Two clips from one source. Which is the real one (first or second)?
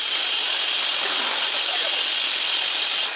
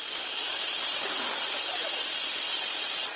second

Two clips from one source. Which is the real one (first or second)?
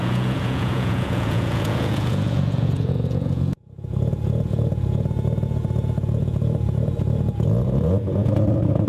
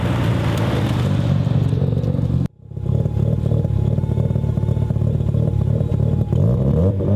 second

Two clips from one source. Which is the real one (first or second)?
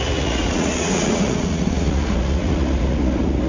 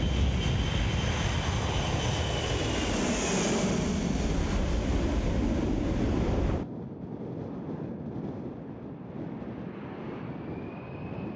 second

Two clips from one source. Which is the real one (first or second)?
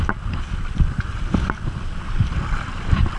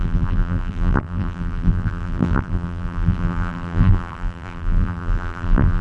first